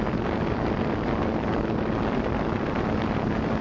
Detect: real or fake real